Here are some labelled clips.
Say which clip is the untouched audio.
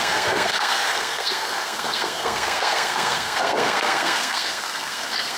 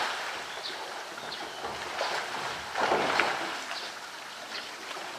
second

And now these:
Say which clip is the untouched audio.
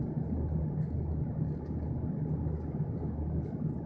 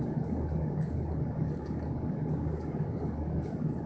first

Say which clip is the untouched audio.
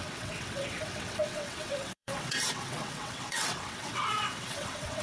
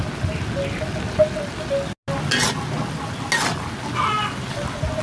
second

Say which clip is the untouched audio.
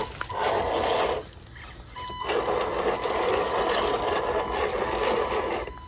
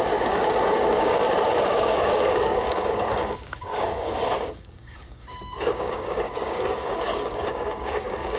first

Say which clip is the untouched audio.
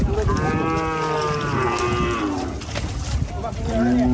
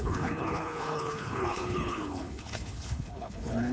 first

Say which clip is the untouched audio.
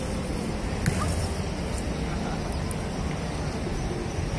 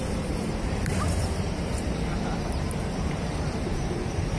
first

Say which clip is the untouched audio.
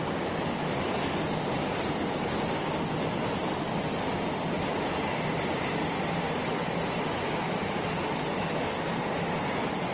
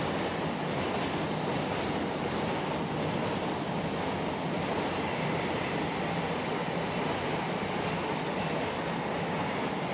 second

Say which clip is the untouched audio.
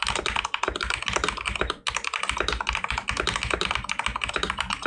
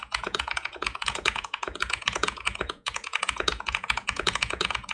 first